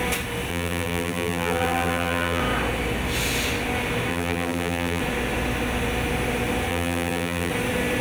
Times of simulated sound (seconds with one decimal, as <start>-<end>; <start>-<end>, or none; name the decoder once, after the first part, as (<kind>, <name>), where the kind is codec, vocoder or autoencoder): 0.5-2.4 (vocoder, BigVGAN v2); 4.1-5.0; 6.7-7.5